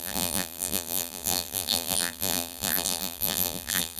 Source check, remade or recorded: remade